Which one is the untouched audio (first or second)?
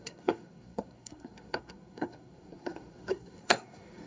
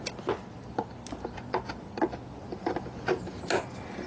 second